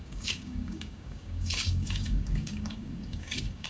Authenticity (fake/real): fake